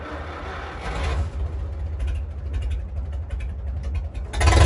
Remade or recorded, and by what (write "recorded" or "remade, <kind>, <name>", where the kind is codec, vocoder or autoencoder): recorded